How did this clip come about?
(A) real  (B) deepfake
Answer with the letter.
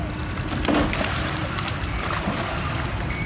B